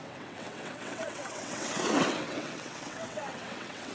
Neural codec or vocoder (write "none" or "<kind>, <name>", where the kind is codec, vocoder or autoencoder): vocoder, WaveNeXt